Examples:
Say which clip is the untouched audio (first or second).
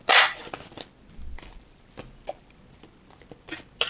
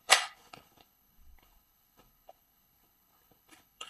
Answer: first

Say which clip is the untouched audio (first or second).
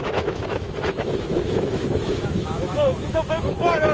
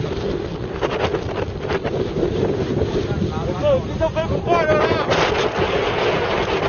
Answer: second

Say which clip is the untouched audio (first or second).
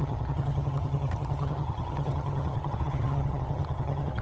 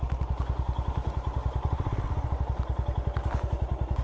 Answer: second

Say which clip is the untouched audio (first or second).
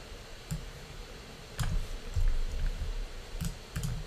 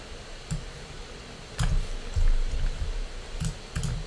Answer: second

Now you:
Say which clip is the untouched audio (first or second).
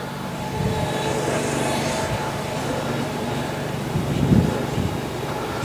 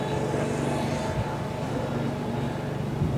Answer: second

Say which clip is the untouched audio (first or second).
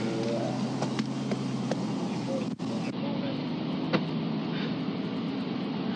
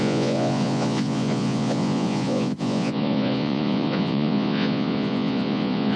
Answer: first